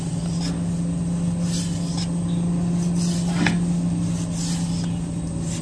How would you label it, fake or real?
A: real